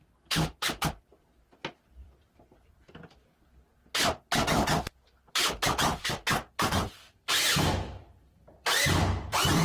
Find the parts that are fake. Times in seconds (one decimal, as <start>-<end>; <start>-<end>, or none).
0.0-3.7; 5.3-9.6